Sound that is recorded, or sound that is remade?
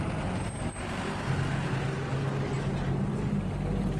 recorded